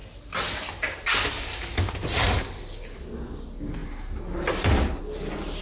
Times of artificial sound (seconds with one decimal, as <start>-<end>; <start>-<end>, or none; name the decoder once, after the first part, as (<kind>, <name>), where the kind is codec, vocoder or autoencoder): none